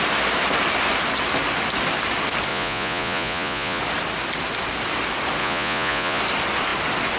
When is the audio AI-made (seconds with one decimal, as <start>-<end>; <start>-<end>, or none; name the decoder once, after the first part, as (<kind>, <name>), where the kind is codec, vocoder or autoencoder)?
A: 2.5-3.8 (vocoder, Vocos); 5.4-6.2